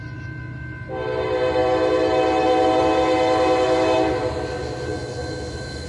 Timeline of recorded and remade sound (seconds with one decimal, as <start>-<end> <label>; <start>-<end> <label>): 0.0-4.9 recorded; 4.9-5.9 remade